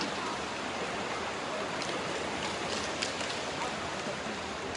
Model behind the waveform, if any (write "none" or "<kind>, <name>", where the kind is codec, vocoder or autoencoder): none